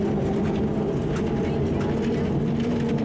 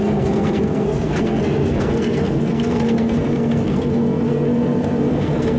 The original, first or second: first